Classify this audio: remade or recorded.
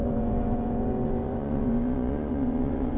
remade